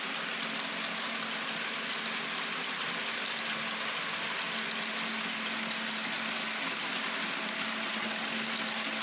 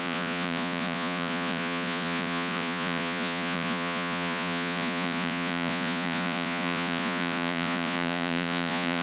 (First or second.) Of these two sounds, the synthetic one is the second